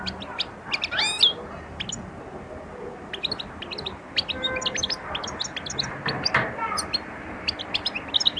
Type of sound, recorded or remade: recorded